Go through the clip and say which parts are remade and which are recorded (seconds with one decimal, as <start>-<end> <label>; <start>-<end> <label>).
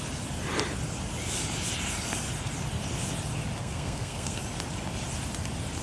0.0-3.6 recorded; 3.6-4.4 remade; 4.4-5.8 recorded